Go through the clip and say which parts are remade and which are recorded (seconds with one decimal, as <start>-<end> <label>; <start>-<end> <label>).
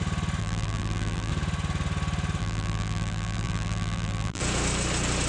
0.0-0.4 recorded; 0.4-1.3 remade; 1.3-2.4 recorded; 2.4-4.4 remade; 4.4-5.3 recorded